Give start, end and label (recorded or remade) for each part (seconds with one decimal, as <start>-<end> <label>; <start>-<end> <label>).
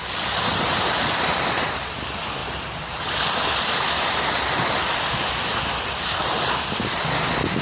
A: 0.0-7.6 recorded